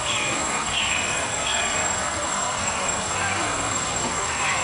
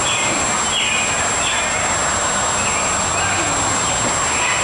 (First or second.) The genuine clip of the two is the second